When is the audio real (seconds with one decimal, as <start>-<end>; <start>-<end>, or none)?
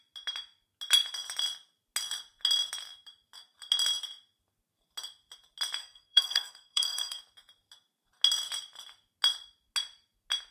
0.0-5.8; 7.2-10.5